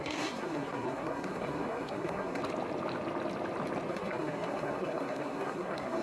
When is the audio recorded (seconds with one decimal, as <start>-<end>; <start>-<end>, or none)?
2.4-3.9